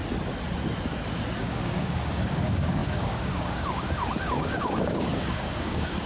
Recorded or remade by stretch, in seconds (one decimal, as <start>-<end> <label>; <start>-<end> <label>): 0.0-1.4 recorded; 1.4-6.1 remade